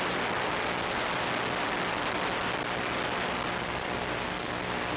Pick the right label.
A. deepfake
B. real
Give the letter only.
B